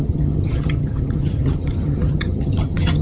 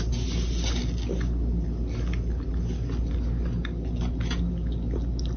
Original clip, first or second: second